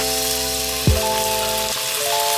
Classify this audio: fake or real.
real